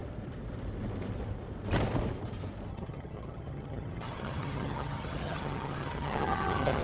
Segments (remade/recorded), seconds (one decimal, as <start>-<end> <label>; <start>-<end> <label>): 0.0-2.7 recorded; 2.7-6.8 remade